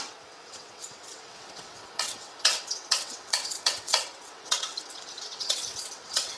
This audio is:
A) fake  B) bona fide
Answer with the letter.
A